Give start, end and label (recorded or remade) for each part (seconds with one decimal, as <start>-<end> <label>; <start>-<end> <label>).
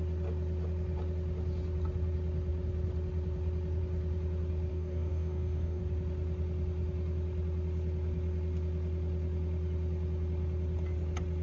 0.0-4.7 recorded; 4.7-5.8 remade; 5.8-11.4 recorded